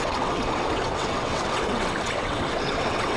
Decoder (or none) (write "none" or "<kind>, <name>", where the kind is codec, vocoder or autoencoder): vocoder, WaveNeXt